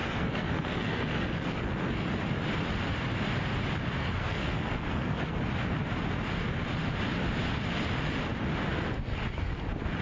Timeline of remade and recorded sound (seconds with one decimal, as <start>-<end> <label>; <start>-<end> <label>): 0.0-2.1 remade; 2.1-4.0 recorded; 4.0-5.4 remade; 5.4-10.0 recorded